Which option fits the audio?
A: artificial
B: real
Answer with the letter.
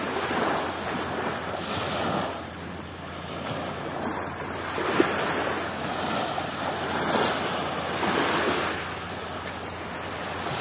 B